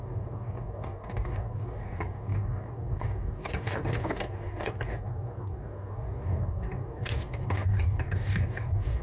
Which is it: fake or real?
fake